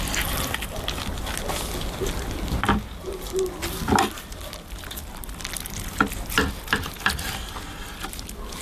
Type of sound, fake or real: real